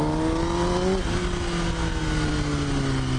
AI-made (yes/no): no